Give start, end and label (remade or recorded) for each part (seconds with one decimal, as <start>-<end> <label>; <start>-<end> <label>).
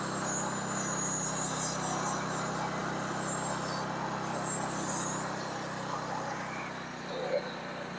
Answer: 0.0-8.0 recorded